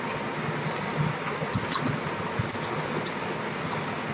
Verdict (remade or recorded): recorded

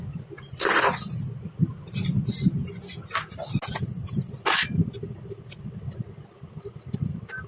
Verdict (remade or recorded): recorded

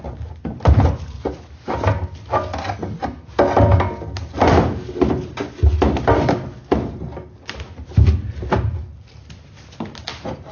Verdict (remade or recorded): recorded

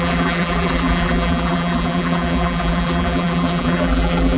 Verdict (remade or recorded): remade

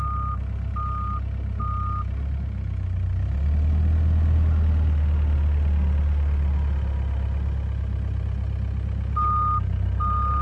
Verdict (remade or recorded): recorded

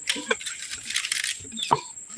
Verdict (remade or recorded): recorded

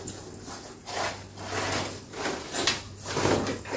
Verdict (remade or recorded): recorded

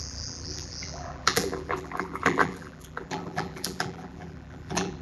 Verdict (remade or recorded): remade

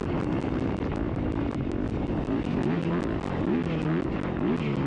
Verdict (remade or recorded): recorded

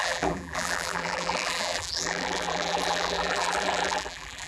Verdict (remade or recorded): remade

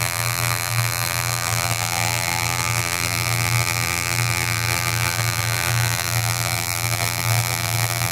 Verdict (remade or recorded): remade